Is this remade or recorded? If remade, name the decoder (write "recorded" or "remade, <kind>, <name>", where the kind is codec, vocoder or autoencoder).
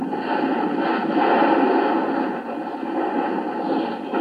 recorded